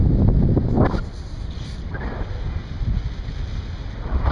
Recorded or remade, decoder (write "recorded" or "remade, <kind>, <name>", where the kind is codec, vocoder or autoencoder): recorded